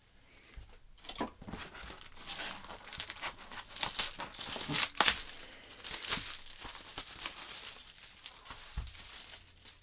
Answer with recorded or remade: recorded